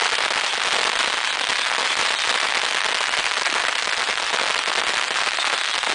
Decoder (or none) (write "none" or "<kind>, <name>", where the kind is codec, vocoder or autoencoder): none